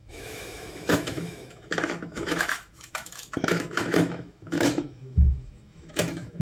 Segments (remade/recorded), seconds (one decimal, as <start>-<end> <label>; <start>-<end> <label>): 0.0-6.4 remade